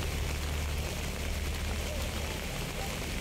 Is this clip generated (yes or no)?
no